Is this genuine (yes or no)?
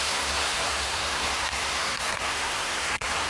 no